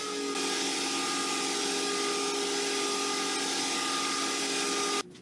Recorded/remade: recorded